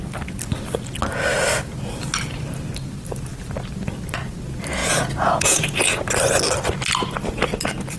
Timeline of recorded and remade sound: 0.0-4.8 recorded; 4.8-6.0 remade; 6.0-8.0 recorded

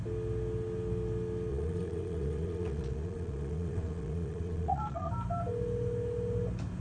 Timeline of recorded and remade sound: 0.0-1.5 recorded; 1.5-5.1 remade; 5.1-6.8 recorded

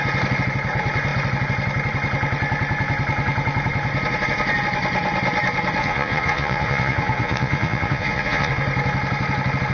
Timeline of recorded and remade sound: 0.0-5.8 recorded; 5.8-8.5 remade; 8.5-9.7 recorded

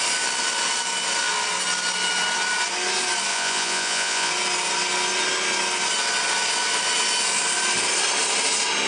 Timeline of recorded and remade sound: 0.0-3.3 recorded; 3.3-4.3 remade; 4.3-8.9 recorded

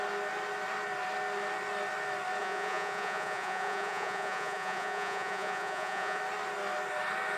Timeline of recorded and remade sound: 0.0-2.4 recorded; 2.4-6.2 remade; 6.2-7.4 recorded

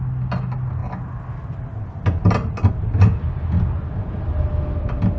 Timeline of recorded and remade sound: 0.0-5.2 recorded

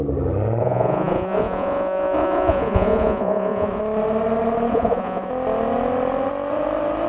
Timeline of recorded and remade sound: 0.0-0.6 recorded; 0.6-3.8 remade; 3.8-4.7 recorded; 4.7-5.3 remade; 5.3-7.1 recorded